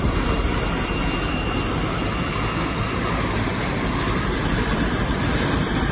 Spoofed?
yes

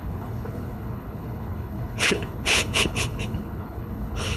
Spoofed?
yes